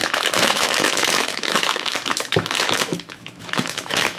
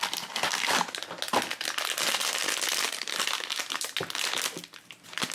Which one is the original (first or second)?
second